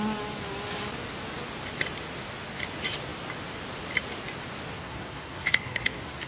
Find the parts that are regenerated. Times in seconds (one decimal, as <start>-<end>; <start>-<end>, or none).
4.8-6.3

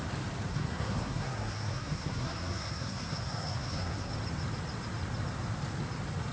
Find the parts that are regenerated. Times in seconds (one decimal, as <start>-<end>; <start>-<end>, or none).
0.5-4.1

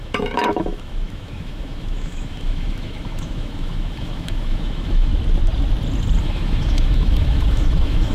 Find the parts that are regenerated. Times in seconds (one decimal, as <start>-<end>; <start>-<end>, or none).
0.0-5.1; 6.2-8.1

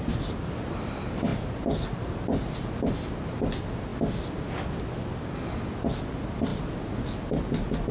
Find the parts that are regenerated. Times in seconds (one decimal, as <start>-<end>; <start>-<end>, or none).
none

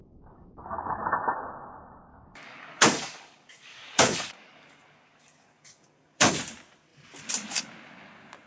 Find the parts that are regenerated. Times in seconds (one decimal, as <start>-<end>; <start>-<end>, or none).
0.0-1.0; 2.1-6.3